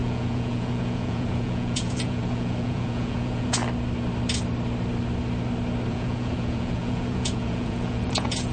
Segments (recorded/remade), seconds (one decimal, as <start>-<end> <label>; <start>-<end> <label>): 0.0-3.6 remade; 3.6-5.9 recorded; 5.9-8.5 remade